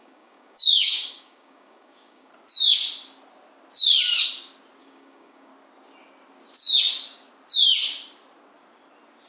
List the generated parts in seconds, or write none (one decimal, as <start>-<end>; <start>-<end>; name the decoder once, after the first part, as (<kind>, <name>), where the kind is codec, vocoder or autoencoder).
0.0-2.3 (codec, DAC); 4.8-5.5